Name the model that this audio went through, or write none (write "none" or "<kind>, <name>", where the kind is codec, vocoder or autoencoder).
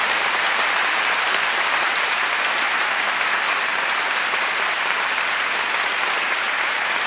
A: vocoder, BigVGAN v2